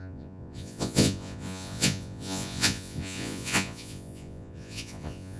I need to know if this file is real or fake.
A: fake